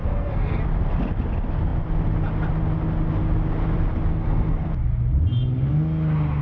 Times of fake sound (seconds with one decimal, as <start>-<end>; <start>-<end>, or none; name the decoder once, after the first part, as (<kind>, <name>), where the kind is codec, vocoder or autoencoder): 0.0-0.6 (codec, SNAC); 4.1-4.7

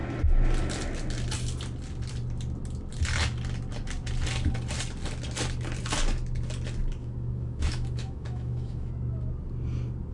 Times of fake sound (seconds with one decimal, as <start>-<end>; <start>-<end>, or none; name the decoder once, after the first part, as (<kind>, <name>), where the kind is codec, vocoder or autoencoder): 7.0-8.9 (autoencoder, DAC-VAE)

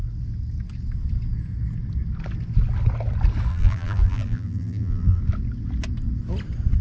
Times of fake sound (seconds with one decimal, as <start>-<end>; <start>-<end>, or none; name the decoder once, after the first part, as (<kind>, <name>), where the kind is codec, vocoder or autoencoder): 3.5-5.2 (vocoder, BigVGAN v2)